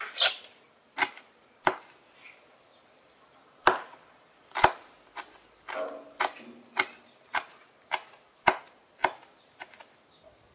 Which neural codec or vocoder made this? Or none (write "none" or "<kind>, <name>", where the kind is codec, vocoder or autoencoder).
none